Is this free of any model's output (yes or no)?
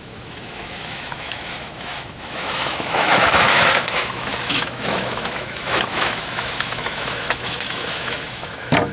no